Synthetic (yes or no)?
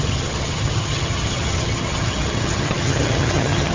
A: yes